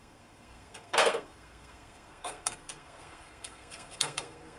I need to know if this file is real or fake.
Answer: fake